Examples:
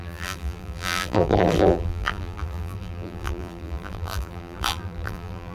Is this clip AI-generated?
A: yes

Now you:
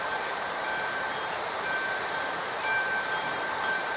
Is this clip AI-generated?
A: yes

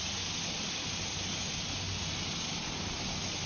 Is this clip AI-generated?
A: no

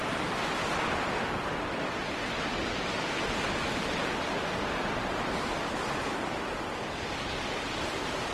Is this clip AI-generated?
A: no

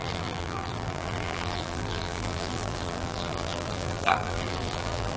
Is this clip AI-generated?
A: yes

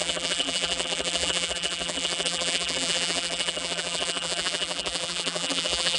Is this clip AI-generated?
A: yes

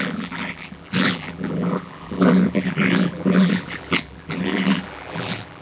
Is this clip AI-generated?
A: yes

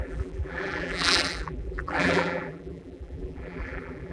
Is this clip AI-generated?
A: yes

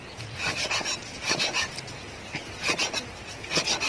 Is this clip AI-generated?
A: no